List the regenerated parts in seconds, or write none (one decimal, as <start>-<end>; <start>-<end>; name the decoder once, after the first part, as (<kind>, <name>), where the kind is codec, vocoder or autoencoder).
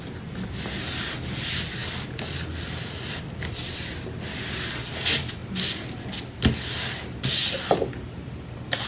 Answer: none